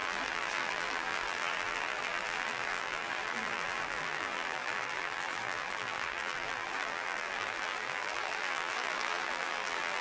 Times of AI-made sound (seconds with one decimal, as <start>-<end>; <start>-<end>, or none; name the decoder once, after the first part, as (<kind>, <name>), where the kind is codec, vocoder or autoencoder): 0.0-10.0 (vocoder, BigVGAN v2)